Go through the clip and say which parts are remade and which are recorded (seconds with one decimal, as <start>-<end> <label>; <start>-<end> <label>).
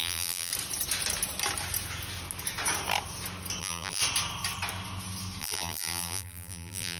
0.0-0.5 remade; 0.5-3.6 recorded; 3.6-4.0 remade; 4.0-5.4 recorded; 5.4-7.0 remade